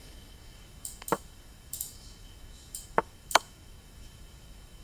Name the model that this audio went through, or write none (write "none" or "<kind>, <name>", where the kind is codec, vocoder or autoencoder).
autoencoder, DAC-VAE